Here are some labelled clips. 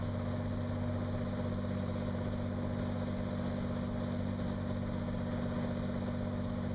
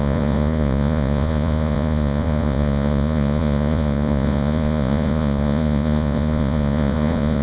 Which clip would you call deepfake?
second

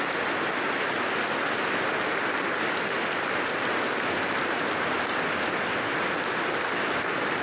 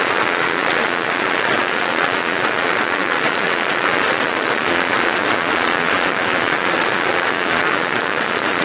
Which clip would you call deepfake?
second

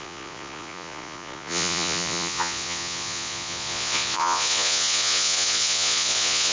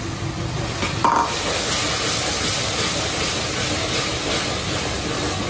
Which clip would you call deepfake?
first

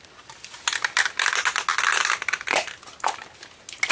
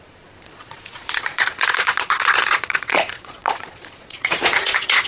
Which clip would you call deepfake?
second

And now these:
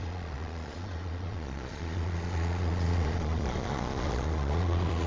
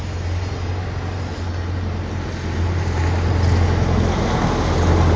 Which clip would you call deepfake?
first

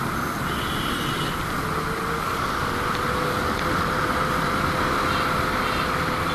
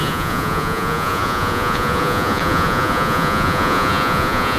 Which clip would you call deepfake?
second